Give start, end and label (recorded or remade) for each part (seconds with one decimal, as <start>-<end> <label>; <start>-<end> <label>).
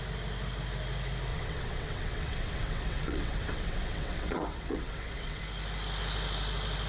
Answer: 0.0-1.3 recorded; 1.3-5.4 remade; 5.4-6.9 recorded